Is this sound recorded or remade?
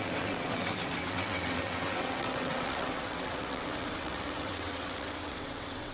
remade